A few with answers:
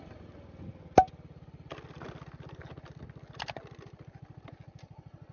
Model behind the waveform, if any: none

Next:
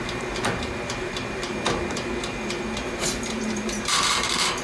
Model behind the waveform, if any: vocoder, BigVGAN v2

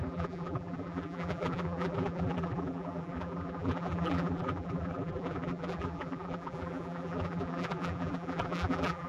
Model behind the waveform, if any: vocoder, BigVGAN v2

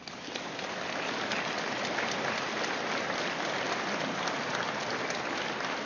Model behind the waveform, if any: none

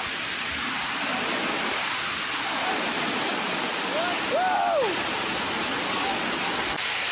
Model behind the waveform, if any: none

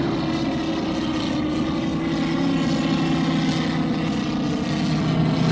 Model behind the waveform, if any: none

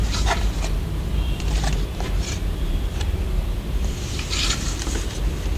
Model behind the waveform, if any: vocoder, BigVGAN v2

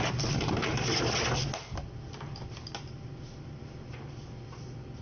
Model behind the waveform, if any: none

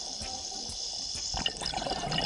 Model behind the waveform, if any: none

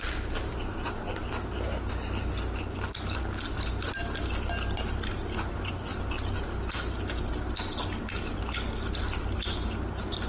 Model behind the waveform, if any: none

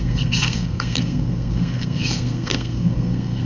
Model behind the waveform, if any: codec, SNAC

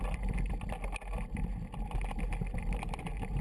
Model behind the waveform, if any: none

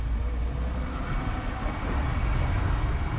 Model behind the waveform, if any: none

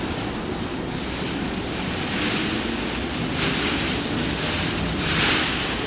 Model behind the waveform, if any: none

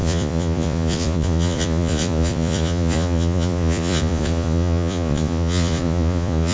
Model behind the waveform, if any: vocoder, Vocos